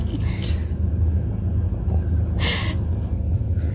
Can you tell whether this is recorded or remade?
recorded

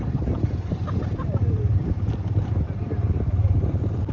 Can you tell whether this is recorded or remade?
remade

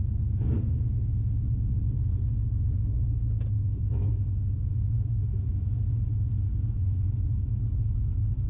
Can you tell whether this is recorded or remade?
recorded